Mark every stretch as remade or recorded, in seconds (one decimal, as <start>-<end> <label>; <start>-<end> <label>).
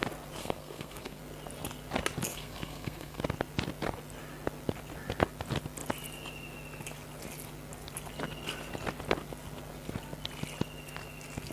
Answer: 0.0-0.4 recorded; 0.4-1.2 remade; 1.2-2.3 recorded; 2.3-3.2 remade; 3.2-11.5 recorded